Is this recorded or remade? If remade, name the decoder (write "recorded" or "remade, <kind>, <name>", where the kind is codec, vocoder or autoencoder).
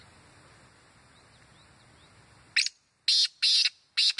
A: recorded